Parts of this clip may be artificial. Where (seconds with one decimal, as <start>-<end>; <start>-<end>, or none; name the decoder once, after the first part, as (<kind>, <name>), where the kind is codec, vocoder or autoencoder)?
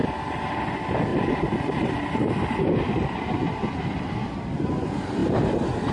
0.0-0.6 (vocoder, BigVGAN v2); 1.1-1.8; 5.2-5.9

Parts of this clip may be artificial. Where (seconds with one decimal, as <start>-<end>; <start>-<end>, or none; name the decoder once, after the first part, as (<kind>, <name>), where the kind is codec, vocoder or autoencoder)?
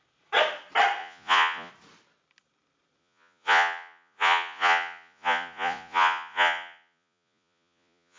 1.0-1.7 (vocoder, Vocos); 3.0-8.2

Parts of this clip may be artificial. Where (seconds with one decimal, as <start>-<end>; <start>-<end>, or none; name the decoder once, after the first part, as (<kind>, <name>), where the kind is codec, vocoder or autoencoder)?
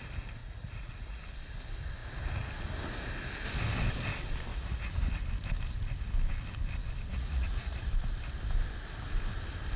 0.4-1.2 (vocoder, Vocos); 4.5-5.1; 7.1-7.9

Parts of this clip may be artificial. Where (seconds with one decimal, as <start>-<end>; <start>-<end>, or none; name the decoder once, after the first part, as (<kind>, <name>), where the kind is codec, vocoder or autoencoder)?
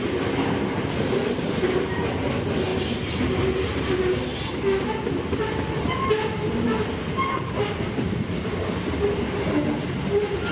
none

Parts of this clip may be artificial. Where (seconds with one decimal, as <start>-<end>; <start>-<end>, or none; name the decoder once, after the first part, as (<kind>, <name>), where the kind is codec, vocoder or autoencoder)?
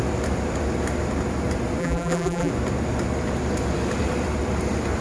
1.8-2.5 (vocoder, BigVGAN v2)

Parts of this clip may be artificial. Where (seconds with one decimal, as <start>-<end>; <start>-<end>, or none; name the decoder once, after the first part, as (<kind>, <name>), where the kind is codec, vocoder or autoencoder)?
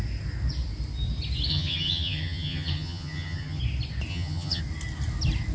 1.5-3.6 (vocoder, HiFi-GAN); 4.1-4.6